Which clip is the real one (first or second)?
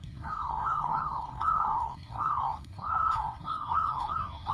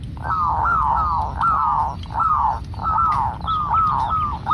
second